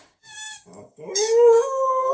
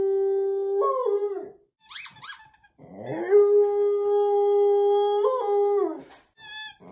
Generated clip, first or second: first